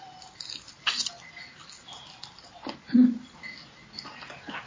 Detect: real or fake real